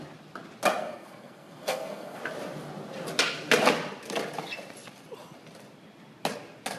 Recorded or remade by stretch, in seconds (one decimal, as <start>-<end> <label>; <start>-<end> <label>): 0.0-0.8 recorded; 0.8-2.2 remade; 2.2-6.8 recorded